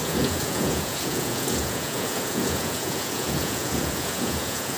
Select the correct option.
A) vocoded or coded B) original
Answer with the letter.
A